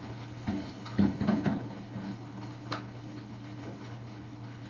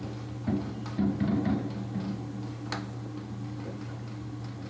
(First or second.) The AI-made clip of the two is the first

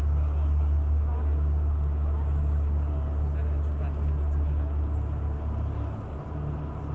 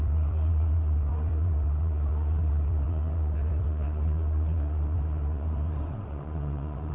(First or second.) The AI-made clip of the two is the second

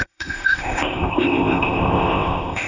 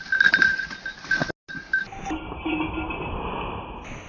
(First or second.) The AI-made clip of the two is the first